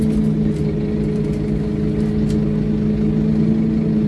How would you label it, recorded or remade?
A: recorded